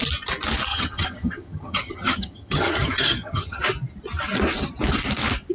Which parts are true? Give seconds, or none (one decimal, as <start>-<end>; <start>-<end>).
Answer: 0.0-0.7; 3.6-5.5